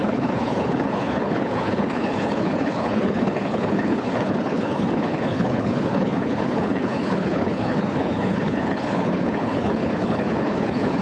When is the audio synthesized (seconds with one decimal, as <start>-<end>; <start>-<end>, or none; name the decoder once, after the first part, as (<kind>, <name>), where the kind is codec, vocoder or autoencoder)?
0.0-11.0 (codec, HILCodec)